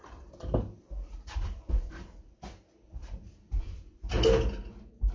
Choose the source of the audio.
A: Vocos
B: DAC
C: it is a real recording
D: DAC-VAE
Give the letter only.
C